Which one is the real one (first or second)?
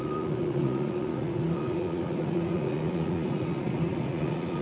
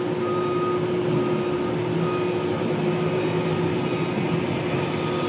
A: second